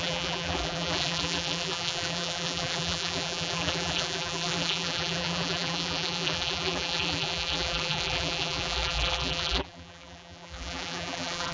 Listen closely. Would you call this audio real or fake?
fake